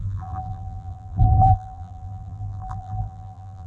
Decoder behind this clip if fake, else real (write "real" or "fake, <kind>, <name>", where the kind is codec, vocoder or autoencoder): fake, vocoder, BigVGAN v2